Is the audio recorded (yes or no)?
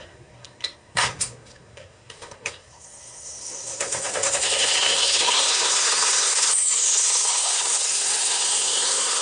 no